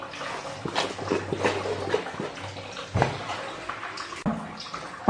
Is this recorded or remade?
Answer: recorded